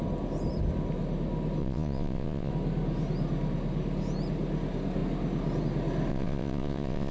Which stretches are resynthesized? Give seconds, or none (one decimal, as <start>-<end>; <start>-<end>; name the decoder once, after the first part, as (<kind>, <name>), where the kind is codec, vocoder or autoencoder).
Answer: 1.6-2.5 (vocoder, Vocos); 6.1-7.1